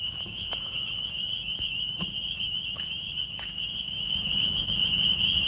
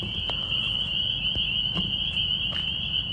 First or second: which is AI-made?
first